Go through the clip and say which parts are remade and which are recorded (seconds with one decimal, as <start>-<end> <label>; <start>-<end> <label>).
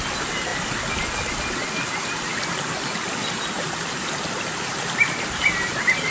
0.0-6.1 recorded